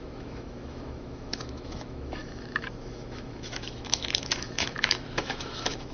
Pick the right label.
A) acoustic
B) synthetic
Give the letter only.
B